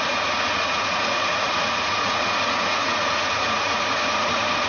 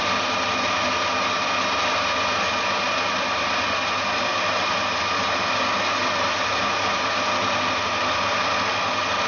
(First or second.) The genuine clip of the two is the second